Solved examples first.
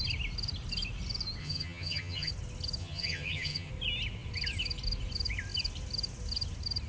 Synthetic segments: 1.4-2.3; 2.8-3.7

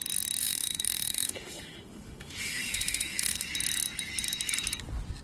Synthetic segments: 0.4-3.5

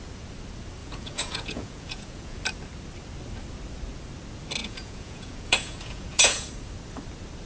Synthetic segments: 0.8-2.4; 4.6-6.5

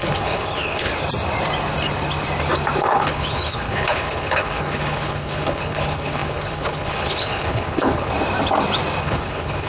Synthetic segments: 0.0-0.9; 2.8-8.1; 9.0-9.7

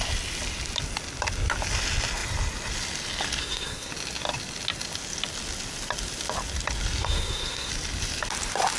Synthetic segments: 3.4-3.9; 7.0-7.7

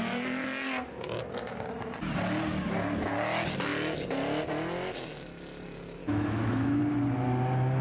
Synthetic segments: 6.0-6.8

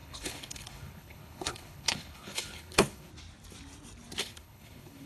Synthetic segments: 0.0-3.1; 4.2-5.1

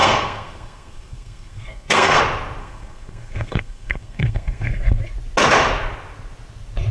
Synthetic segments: 0.0-2.2; 2.6-5.0